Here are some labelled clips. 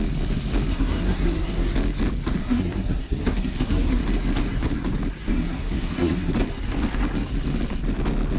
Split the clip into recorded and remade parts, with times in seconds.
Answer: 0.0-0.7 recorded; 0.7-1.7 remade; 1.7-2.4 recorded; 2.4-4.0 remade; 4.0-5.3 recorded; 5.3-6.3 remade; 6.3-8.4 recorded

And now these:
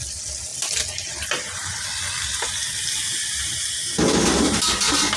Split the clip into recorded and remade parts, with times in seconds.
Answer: 0.0-0.5 recorded; 0.5-2.0 remade; 2.0-5.2 recorded

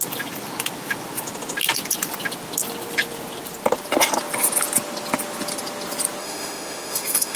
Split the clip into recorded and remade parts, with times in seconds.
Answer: 0.0-6.2 recorded; 6.2-7.4 remade

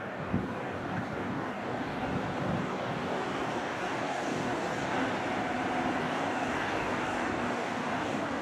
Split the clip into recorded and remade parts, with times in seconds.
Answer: 0.0-2.1 remade; 2.1-2.6 recorded; 2.6-4.9 remade; 4.9-6.0 recorded; 6.0-8.4 remade

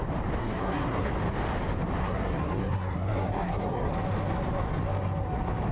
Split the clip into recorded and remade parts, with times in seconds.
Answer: 0.0-0.4 recorded; 0.4-1.1 remade; 1.1-2.0 recorded; 2.0-3.9 remade; 3.9-5.7 recorded

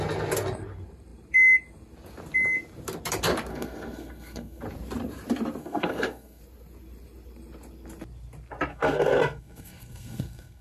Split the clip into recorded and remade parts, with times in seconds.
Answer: 0.0-3.5 recorded; 3.5-4.6 remade; 4.6-5.6 recorded; 5.6-6.4 remade; 6.4-8.7 recorded; 8.7-10.6 remade